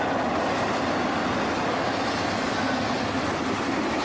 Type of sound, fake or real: real